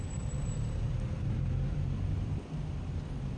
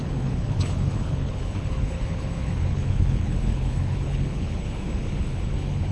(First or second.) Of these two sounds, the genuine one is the first